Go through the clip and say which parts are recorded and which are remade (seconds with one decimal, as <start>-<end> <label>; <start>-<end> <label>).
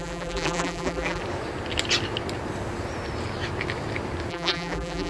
0.0-1.2 remade; 1.2-4.3 recorded; 4.3-5.1 remade